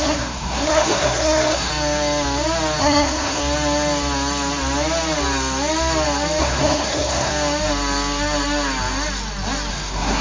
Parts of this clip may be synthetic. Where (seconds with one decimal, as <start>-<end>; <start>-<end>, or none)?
0.0-1.7; 2.8-3.4; 6.4-7.3; 9.7-10.2